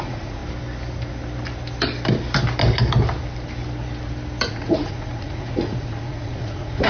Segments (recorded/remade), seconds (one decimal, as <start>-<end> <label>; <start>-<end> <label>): 0.0-0.4 remade; 0.4-4.5 recorded; 4.5-6.9 remade

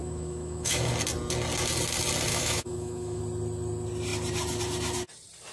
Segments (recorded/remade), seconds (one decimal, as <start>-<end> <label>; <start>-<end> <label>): 0.0-0.9 remade; 0.9-2.3 recorded; 2.3-3.2 remade; 3.2-5.5 recorded

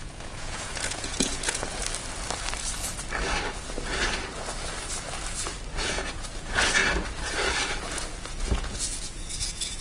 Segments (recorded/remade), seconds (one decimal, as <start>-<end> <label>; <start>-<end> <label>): 0.0-1.8 remade; 1.8-5.8 recorded; 5.8-6.8 remade; 6.8-7.9 recorded; 7.9-9.8 remade

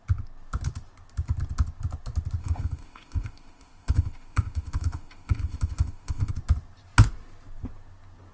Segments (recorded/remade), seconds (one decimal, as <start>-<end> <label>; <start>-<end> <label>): 0.0-2.4 recorded; 2.4-6.3 remade; 6.3-8.3 recorded

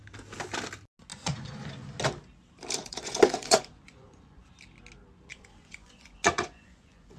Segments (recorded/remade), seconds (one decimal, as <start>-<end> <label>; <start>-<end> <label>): 0.0-1.1 recorded; 1.1-1.7 remade; 1.7-2.8 recorded; 2.8-4.5 remade; 4.5-5.3 recorded; 5.3-7.2 remade